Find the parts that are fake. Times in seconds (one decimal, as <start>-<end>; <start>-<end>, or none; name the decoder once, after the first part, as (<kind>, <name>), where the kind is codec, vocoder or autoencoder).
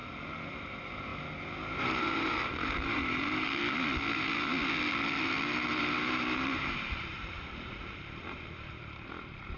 0.5-1.1 (vocoder, BigVGAN v2); 1.8-3.6; 5.7-9.6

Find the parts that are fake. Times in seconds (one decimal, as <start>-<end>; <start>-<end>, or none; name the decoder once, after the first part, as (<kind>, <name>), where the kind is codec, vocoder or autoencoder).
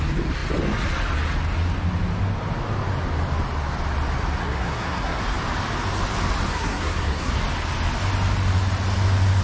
4.4-5.2 (codec, SNAC); 6.5-7.3